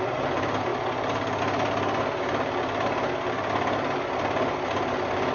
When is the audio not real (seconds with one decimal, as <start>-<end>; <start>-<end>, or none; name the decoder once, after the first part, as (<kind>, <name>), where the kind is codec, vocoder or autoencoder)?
none

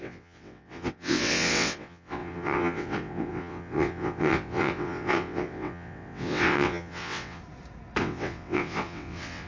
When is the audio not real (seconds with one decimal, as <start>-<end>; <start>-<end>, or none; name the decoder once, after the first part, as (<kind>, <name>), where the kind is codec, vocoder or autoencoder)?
0.0-7.4 (vocoder, WaveNeXt); 8.0-9.5